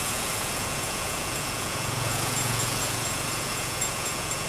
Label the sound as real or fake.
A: fake